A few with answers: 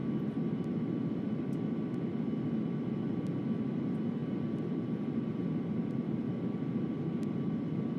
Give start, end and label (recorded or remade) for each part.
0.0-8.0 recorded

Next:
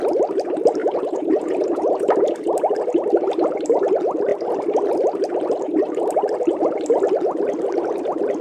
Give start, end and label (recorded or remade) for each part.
0.0-0.8 recorded; 0.8-2.1 remade; 2.1-8.4 recorded

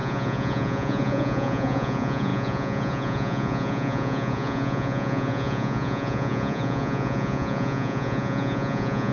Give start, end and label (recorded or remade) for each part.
0.0-9.1 remade

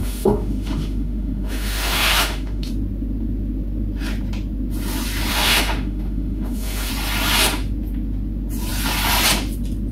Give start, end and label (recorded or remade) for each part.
0.0-2.7 remade; 2.7-5.3 recorded; 5.3-6.9 remade; 6.9-9.9 recorded

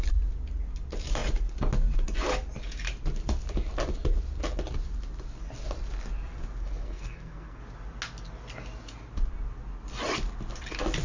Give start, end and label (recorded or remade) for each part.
0.0-6.6 recorded; 6.6-7.6 remade; 7.6-11.0 recorded

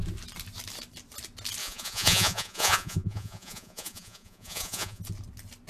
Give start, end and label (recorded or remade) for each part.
0.0-1.6 recorded; 1.6-5.0 remade; 5.0-5.7 recorded